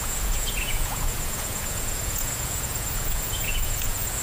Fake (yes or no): yes